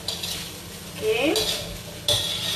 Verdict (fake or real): real